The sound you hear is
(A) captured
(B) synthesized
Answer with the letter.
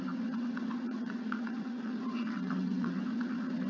B